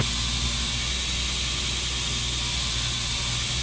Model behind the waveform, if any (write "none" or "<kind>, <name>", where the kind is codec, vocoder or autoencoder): none